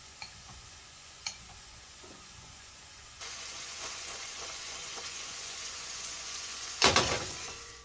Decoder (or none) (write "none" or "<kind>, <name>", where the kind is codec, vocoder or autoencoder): vocoder, Vocos